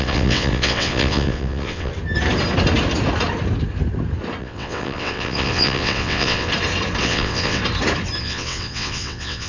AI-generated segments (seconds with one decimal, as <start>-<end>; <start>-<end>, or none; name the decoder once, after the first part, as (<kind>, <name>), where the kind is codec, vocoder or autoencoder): 0.0-1.9 (vocoder, WaveNeXt); 4.4-6.5; 7.0-7.6; 8.2-9.5